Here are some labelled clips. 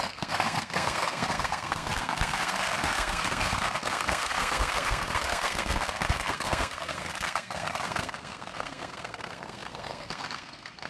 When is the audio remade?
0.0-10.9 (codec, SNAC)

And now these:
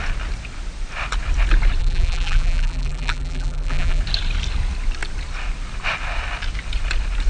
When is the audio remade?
1.8-4.0 (vocoder, BigVGAN v2)

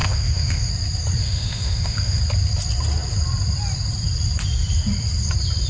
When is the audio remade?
0.0-0.7 (autoencoder, DAC-VAE); 1.2-2.2